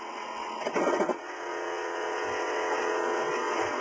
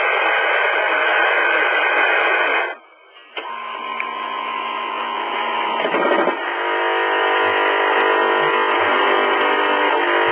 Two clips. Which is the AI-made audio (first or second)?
first